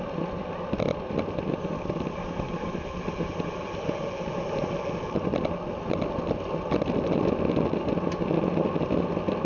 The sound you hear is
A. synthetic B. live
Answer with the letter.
B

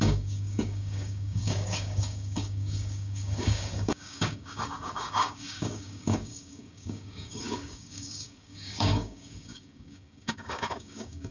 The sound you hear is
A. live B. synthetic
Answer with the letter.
B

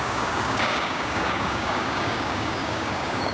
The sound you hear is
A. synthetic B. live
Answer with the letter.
A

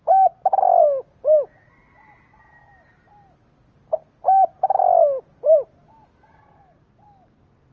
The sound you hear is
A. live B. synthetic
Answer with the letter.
A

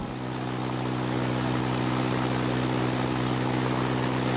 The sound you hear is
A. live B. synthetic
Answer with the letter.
A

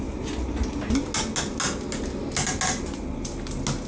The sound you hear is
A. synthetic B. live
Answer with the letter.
B